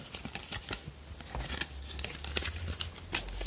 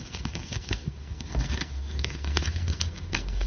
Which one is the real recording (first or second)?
first